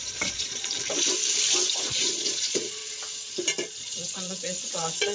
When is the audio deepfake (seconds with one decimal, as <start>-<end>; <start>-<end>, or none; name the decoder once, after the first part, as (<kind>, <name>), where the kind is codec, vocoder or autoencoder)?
0.0-0.6 (vocoder, Vocos); 1.7-2.8; 3.7-5.1